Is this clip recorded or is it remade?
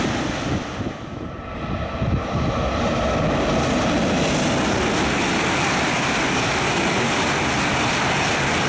recorded